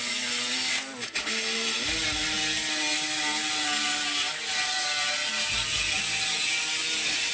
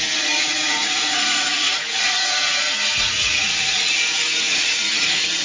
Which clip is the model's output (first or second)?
second